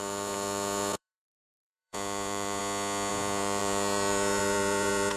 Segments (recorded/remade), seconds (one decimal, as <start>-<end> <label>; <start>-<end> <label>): 0.0-2.6 remade; 2.6-3.1 recorded; 3.1-5.2 remade